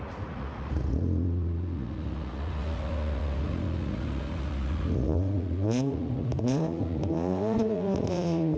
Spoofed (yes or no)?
yes